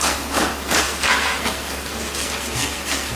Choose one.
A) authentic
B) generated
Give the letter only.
B